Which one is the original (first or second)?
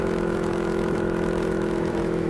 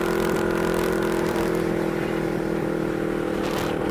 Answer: second